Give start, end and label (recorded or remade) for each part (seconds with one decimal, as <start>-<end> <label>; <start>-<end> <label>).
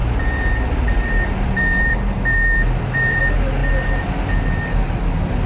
0.0-3.2 remade; 3.2-3.6 recorded; 3.6-4.1 remade; 4.1-5.5 recorded